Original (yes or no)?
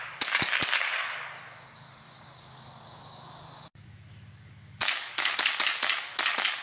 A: no